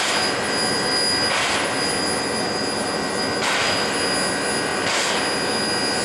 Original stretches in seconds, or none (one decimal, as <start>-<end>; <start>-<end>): 0.0-6.0